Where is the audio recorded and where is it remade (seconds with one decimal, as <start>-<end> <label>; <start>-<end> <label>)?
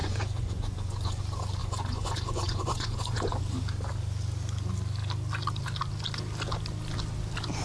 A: 0.0-1.2 remade; 1.2-1.6 recorded; 1.6-3.4 remade; 3.4-7.6 recorded